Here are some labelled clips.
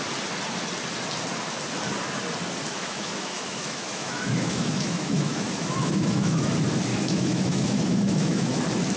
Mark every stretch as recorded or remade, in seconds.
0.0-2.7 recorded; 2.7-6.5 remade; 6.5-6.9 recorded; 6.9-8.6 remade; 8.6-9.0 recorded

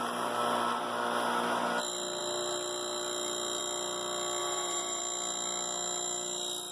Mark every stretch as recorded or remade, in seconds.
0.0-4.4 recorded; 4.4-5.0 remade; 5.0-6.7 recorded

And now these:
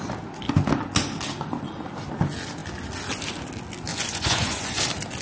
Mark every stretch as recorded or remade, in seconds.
0.0-3.9 recorded; 3.9-4.8 remade; 4.8-5.2 recorded

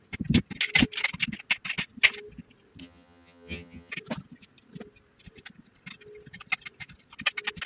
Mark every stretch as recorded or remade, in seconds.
0.0-2.8 recorded; 2.8-3.9 remade; 3.9-7.7 recorded

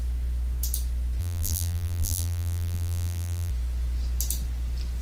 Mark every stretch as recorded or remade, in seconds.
0.0-1.2 recorded; 1.2-3.5 remade; 3.5-5.0 recorded